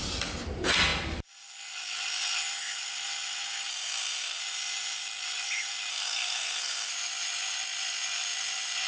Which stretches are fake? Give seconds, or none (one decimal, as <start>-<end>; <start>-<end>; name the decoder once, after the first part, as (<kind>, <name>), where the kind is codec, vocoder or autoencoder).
3.7-4.4 (codec, SNAC); 5.9-6.9